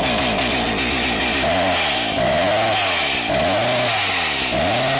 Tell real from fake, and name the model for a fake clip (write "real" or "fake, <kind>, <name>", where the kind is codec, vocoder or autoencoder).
real